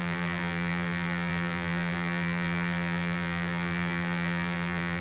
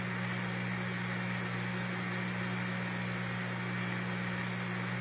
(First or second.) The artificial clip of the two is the first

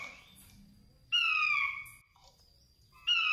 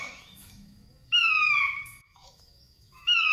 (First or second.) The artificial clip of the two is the second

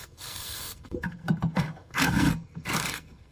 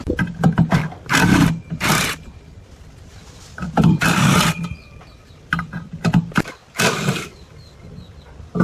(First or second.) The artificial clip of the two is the first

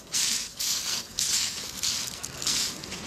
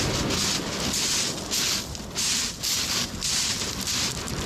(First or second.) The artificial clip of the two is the first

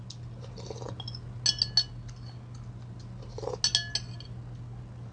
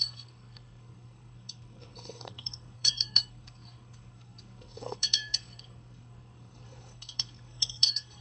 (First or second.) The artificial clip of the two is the second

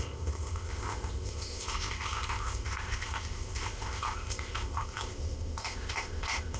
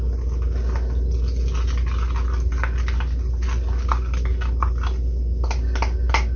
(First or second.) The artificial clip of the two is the first